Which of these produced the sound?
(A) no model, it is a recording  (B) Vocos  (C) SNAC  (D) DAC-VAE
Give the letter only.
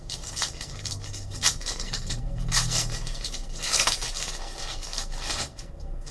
C